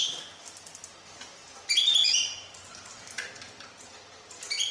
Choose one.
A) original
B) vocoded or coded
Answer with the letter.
A